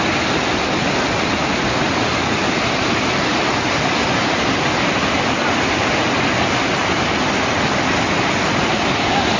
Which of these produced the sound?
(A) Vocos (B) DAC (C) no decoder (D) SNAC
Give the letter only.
C